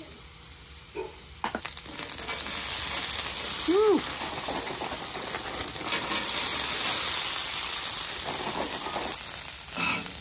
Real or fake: real